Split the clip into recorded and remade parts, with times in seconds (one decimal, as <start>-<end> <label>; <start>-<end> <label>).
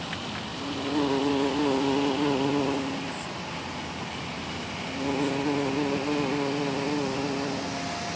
0.0-8.2 recorded